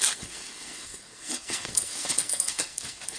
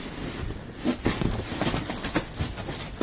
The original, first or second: second